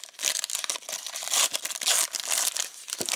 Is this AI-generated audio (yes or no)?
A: no